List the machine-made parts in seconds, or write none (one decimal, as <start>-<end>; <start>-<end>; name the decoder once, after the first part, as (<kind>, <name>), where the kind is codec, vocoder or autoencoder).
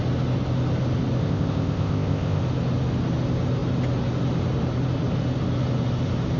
1.2-2.4 (codec, ZipCodec)